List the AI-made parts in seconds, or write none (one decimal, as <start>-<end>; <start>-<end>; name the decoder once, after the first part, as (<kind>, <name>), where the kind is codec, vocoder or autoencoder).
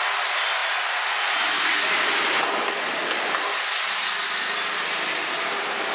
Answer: none